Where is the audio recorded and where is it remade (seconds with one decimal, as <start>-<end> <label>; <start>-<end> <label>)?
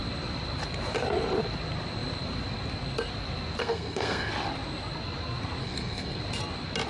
0.0-3.6 recorded; 3.6-4.3 remade; 4.3-5.6 recorded; 5.6-6.2 remade; 6.2-6.9 recorded